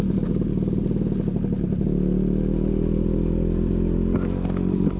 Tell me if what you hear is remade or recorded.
recorded